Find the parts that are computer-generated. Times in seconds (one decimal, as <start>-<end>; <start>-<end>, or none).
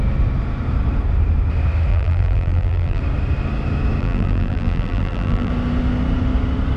1.9-3.0; 4.0-5.5